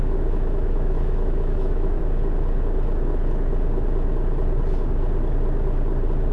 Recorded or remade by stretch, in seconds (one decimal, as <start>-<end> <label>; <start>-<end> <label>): 0.0-2.0 remade; 2.0-6.3 recorded